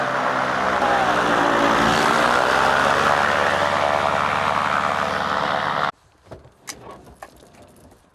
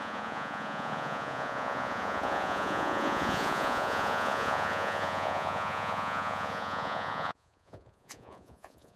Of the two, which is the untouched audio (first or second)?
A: first